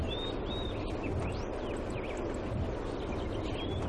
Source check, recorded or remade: recorded